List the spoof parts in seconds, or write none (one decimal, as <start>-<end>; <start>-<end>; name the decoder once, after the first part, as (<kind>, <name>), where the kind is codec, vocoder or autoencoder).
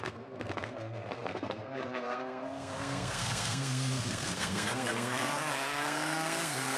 0.0-6.8 (codec, SNAC)